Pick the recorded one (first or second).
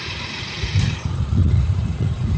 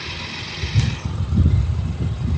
second